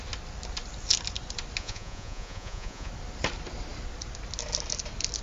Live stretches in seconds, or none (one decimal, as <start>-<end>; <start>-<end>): 0.0-1.6; 2.9-5.2